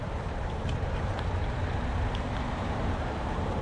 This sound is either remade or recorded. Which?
remade